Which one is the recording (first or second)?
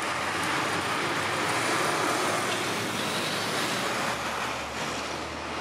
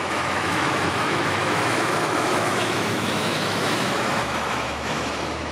first